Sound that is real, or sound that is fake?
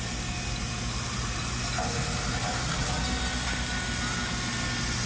real